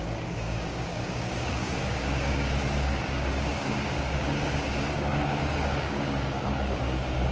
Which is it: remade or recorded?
remade